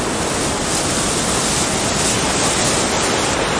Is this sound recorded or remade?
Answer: recorded